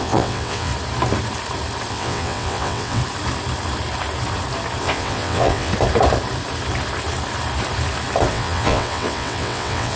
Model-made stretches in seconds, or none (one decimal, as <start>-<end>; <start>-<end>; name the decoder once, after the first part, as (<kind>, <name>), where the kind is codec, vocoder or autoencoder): 0.0-0.7 (vocoder, WaveNeXt); 1.9-3.0; 4.8-5.7; 8.3-10.0